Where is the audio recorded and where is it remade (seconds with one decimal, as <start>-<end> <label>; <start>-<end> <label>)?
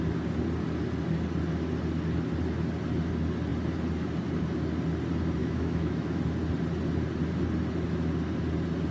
0.0-5.4 recorded; 5.4-6.2 remade; 6.2-8.9 recorded